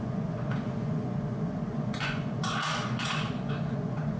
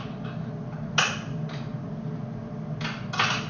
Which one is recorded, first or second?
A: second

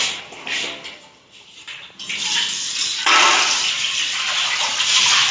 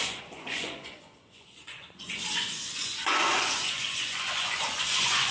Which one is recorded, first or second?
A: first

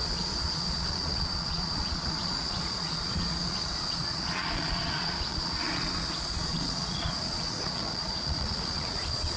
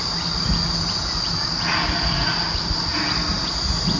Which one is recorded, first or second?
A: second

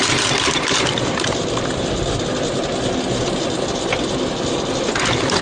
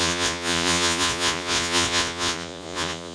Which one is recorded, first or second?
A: first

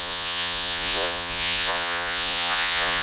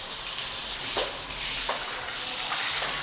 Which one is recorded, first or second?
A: second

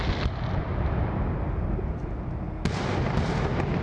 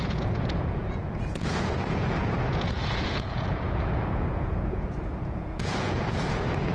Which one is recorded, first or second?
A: first